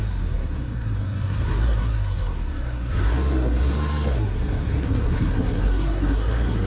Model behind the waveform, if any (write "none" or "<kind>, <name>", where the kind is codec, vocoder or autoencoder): codec, SNAC